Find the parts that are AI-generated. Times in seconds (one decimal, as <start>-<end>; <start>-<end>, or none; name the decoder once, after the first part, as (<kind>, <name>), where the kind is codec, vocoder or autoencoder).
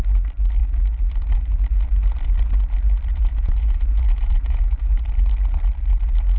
3.1-5.0 (vocoder, Vocos)